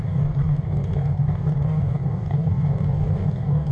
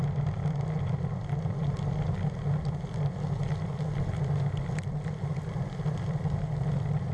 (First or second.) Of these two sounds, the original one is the second